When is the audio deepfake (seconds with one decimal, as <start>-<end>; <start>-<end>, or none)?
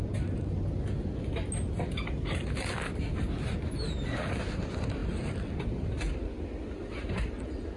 none